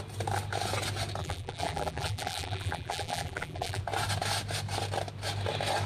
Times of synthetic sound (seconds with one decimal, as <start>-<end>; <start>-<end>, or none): 1.2-3.8